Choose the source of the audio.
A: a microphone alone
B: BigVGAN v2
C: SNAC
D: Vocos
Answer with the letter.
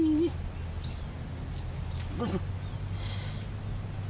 A